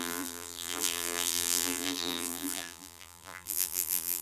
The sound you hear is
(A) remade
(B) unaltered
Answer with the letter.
A